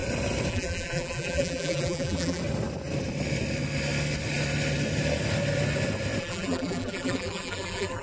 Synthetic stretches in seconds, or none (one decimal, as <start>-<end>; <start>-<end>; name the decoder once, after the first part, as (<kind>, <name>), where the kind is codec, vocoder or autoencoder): 0.5-2.4 (vocoder, BigVGAN v2); 6.2-8.0